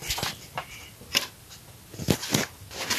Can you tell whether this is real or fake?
real